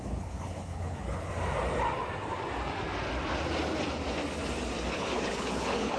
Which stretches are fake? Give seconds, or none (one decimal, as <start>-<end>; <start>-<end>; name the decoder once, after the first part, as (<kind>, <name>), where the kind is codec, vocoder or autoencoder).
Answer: 0.0-1.3 (codec, HILCodec); 4.9-6.0